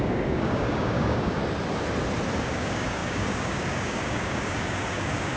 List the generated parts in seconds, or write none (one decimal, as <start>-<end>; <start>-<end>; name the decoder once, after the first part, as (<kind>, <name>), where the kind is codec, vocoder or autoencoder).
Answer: 0.0-1.4 (codec, DAC); 2.4-5.4

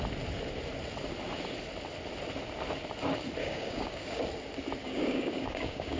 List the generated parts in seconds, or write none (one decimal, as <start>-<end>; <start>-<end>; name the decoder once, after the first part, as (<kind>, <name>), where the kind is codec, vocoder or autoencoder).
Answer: 3.4-4.2 (codec, DAC); 4.8-6.0

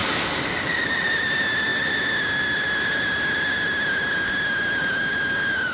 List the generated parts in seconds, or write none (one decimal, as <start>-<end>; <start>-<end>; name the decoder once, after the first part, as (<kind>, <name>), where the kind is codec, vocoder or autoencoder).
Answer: none

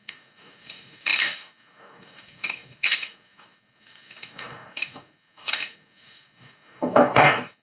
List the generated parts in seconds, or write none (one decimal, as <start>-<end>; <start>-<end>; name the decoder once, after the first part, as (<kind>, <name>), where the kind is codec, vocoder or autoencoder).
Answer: 0.0-7.6 (codec, DAC)

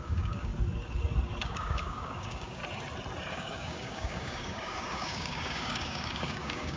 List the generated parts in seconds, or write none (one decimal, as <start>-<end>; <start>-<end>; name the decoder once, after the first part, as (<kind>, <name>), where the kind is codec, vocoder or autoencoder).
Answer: 0.0-0.5 (codec, DAC); 1.4-2.6; 3.3-6.8